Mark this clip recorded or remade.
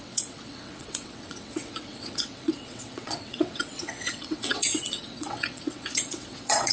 remade